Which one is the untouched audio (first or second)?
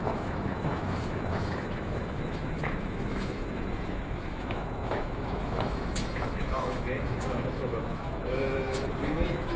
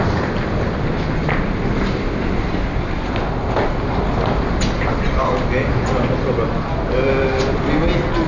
second